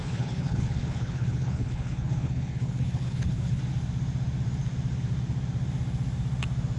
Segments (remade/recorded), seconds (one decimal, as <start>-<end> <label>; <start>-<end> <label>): 0.0-3.6 remade; 3.6-6.8 recorded